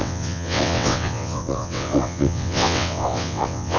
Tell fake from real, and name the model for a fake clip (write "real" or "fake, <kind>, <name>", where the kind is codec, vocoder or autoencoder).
fake, vocoder, WaveNeXt